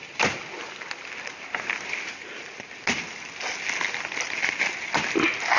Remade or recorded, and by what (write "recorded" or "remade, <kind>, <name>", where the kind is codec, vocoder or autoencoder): recorded